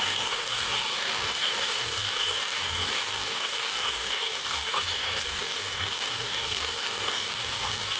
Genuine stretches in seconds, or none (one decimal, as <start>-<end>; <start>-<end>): none